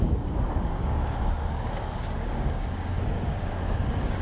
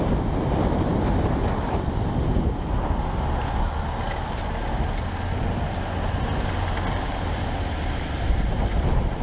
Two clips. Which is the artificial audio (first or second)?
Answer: first